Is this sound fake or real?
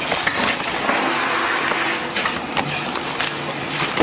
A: real